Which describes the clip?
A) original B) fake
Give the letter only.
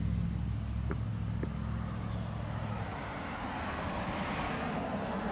A